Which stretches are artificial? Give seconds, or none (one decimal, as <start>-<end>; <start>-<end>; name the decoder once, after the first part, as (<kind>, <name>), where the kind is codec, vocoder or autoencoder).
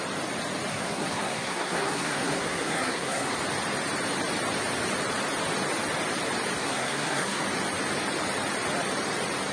0.7-3.3 (codec, SNAC); 6.6-7.4